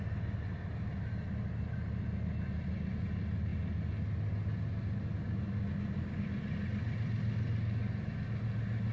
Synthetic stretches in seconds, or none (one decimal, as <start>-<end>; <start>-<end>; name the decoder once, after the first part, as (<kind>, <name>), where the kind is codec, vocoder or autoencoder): none